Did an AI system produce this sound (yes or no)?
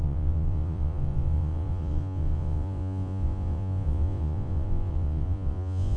yes